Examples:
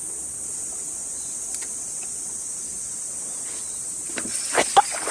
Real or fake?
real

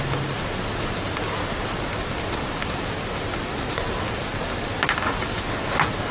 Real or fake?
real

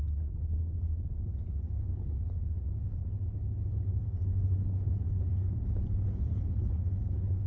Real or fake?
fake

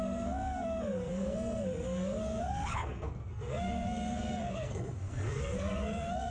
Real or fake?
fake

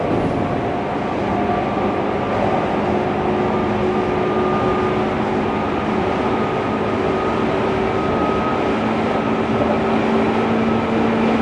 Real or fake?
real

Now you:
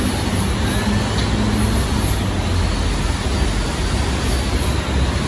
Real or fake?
real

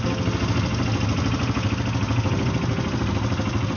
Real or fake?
real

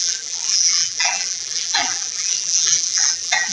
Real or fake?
fake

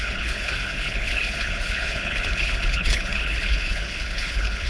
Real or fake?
fake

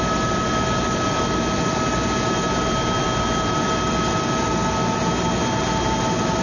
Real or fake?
real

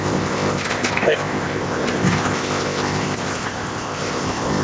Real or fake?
fake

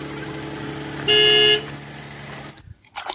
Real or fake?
real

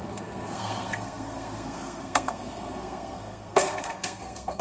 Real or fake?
fake